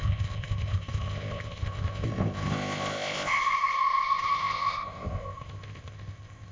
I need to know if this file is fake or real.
fake